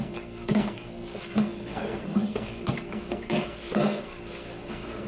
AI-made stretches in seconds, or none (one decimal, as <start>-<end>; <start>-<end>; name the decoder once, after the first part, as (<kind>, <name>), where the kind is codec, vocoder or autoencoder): 0.0-5.1 (codec, SNAC)